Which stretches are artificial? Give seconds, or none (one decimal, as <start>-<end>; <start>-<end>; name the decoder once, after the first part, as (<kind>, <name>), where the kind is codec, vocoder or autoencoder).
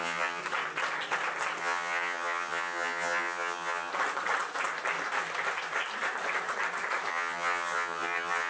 0.0-0.4 (vocoder, HiFi-GAN); 1.6-3.9; 7.1-8.5